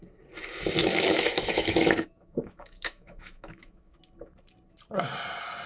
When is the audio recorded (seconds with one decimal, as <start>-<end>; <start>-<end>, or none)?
0.0-0.8; 4.0-5.7